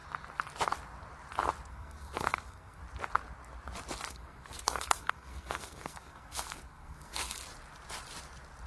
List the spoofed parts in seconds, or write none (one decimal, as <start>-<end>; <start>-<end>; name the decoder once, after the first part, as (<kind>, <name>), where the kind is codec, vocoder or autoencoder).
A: 1.7-2.8 (codec, SNAC); 4.1-7.4